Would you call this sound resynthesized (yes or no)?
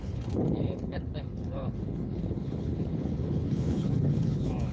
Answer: yes